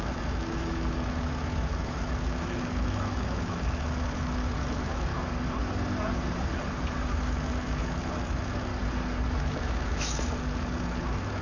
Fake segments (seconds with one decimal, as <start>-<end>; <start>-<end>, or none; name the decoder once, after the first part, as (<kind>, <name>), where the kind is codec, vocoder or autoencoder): 0.0-5.1 (autoencoder, DAC-VAE); 7.1-8.7; 9.4-11.4